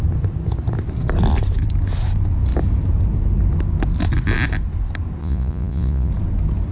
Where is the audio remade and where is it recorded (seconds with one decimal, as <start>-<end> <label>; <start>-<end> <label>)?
0.0-5.2 recorded; 5.2-6.1 remade; 6.1-6.7 recorded